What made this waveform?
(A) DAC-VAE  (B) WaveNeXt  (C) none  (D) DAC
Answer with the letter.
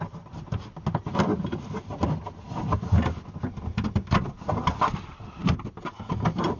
C